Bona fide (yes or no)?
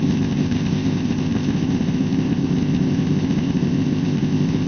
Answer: no